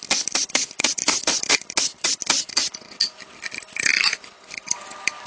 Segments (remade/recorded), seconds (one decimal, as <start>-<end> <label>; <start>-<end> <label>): 0.0-2.2 remade; 2.2-3.5 recorded; 3.5-3.9 remade; 3.9-4.8 recorded; 4.8-5.3 remade